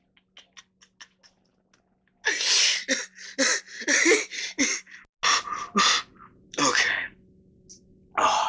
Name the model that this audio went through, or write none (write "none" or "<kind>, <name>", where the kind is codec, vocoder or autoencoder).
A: none